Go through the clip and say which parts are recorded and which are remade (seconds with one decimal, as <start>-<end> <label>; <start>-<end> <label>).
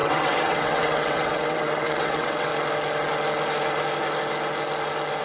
0.0-2.5 remade; 2.5-5.2 recorded